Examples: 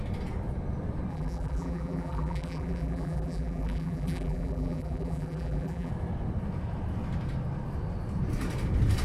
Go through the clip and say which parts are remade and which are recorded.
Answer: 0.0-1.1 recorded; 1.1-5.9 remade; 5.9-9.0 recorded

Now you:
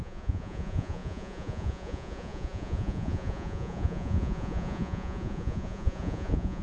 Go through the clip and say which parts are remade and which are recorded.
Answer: 0.0-6.6 remade

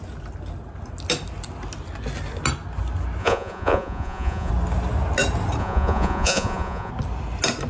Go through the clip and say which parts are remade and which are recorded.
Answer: 0.0-3.2 recorded; 3.2-4.5 remade; 4.5-5.6 recorded; 5.6-6.9 remade; 6.9-7.7 recorded